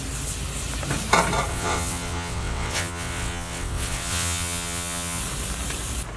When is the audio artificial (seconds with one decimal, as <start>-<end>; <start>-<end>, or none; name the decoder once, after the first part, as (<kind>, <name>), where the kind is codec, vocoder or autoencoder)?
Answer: 1.5-5.2 (vocoder, WaveNeXt)